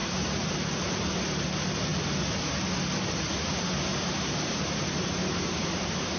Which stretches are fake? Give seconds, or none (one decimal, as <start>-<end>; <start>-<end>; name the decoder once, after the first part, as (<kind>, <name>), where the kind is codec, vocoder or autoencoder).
0.0-0.5 (vocoder, BigVGAN v2); 3.9-6.2